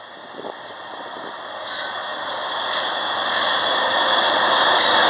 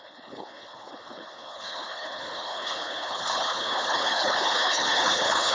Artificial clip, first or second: second